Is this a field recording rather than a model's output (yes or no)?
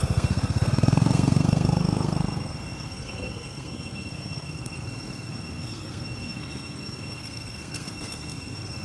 no